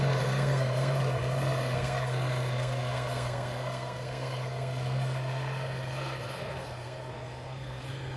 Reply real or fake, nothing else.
fake